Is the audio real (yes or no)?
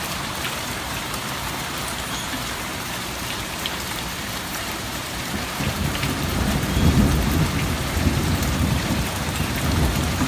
no